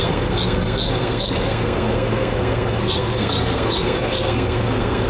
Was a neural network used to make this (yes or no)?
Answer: yes